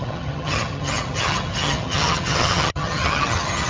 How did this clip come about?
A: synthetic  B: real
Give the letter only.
A